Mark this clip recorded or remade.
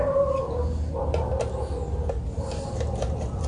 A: recorded